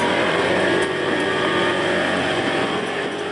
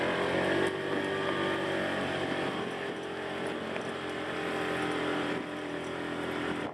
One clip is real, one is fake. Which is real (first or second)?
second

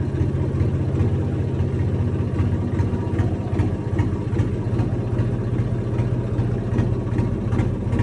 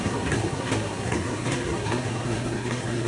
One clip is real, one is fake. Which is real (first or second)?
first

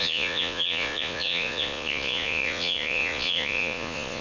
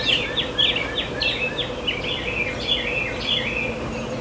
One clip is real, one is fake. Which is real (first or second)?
second